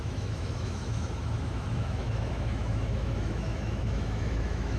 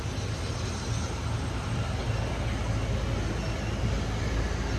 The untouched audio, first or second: second